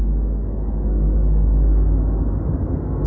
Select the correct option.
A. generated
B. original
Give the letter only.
A